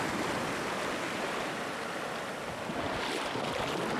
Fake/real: real